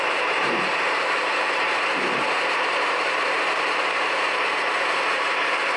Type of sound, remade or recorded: remade